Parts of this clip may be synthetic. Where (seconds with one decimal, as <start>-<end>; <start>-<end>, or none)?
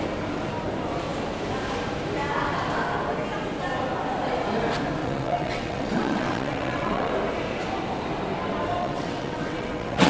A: 5.0-7.1; 8.8-10.1